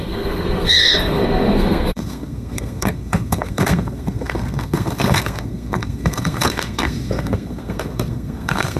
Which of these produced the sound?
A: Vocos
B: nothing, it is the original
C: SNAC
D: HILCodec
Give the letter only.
C